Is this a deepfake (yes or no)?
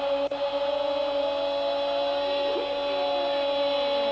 no